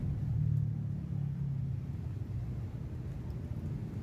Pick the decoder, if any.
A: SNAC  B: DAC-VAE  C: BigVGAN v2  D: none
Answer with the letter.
D